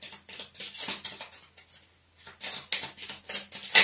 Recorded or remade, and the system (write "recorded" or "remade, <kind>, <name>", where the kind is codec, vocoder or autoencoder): recorded